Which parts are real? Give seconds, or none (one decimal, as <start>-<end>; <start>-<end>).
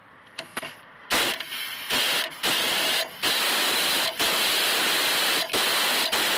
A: 0.0-6.4